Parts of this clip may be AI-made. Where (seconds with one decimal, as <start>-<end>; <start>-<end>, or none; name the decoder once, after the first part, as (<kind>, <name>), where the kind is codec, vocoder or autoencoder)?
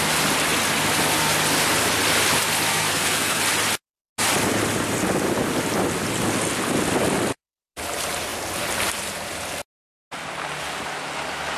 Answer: 2.7-3.4 (codec, SNAC)